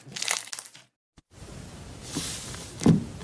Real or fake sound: real